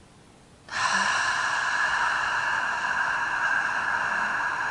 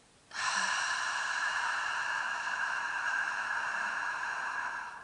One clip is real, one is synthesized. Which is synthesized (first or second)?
second